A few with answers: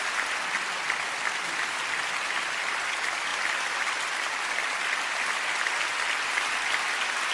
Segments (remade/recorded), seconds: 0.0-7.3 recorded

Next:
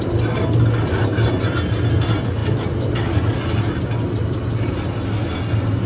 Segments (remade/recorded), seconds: 0.0-5.9 recorded

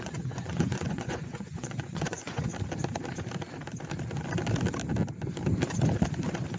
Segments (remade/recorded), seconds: 0.0-2.5 remade; 2.5-6.6 recorded

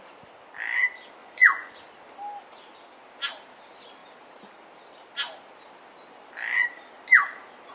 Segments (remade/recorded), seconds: 0.0-1.2 recorded; 1.2-1.7 remade; 1.7-7.7 recorded